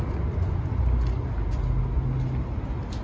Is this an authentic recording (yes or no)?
yes